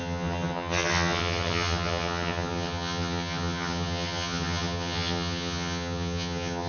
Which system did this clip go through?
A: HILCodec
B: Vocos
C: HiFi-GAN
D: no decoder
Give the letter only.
C